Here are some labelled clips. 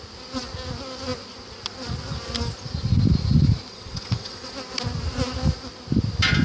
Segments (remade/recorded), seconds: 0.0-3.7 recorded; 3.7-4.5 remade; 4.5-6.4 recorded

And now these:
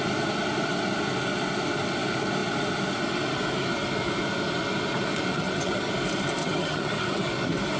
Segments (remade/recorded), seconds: 0.0-5.3 recorded; 5.3-5.9 remade; 5.9-6.4 recorded; 6.4-7.3 remade; 7.3-7.8 recorded